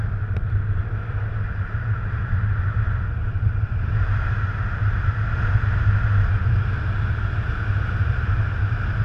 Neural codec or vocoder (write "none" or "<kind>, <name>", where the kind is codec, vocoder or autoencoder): none